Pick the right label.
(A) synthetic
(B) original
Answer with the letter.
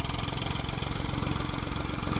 B